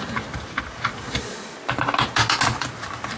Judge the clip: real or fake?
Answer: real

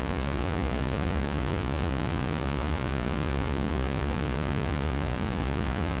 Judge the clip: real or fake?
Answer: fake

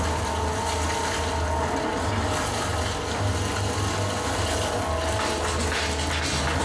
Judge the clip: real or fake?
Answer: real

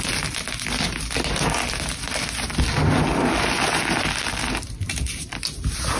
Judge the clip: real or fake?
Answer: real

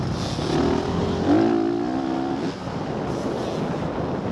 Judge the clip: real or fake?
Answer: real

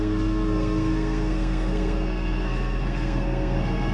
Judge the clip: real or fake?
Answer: fake